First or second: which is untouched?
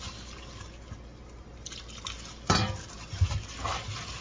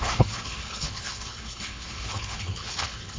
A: first